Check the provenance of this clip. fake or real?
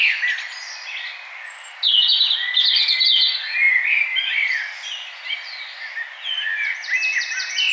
real